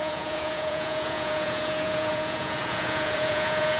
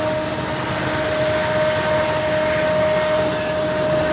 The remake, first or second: first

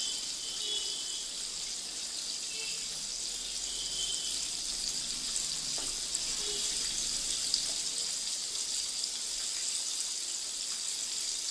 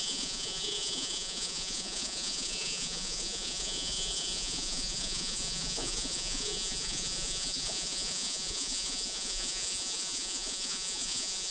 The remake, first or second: second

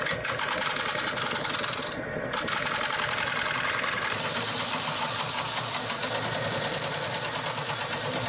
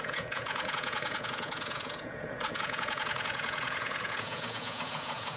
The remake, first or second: second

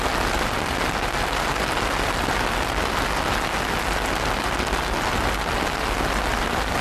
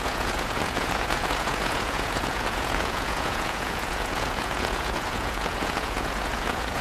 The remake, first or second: second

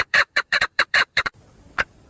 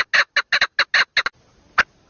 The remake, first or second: first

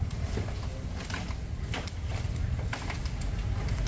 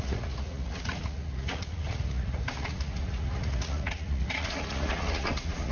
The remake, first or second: second